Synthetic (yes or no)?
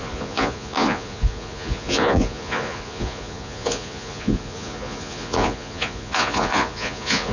yes